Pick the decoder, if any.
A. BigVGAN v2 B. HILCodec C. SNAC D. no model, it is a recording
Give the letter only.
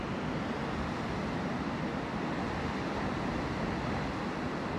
D